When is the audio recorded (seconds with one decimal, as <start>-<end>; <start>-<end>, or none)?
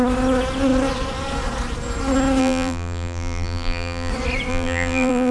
0.0-2.4; 4.1-4.5